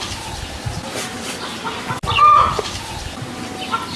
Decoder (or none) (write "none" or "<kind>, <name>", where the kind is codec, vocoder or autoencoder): none